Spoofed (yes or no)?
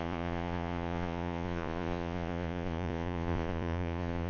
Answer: yes